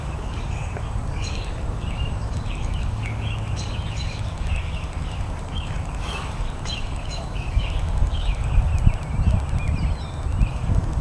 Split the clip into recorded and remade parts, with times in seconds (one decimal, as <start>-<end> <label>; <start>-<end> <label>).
0.0-8.7 remade; 8.7-10.5 recorded; 10.5-11.0 remade